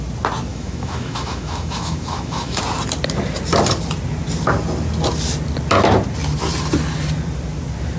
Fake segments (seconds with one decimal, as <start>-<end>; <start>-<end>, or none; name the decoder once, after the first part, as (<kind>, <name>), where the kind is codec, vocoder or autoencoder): 0.5-2.6 (autoencoder, DAC-VAE)